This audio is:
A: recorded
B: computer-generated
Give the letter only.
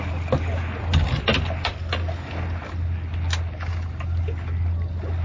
A